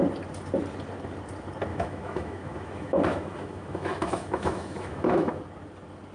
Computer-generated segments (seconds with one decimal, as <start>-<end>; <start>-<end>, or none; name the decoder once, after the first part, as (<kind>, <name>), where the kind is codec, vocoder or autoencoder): 1.7-5.4 (autoencoder, DAC-VAE)